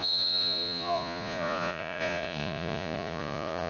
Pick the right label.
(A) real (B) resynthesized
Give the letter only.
B